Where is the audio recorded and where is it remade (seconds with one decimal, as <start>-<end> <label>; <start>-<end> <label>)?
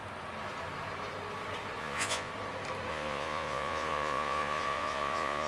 0.0-1.8 recorded; 1.8-2.3 remade; 2.3-2.9 recorded; 2.9-5.5 remade